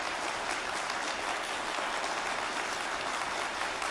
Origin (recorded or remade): recorded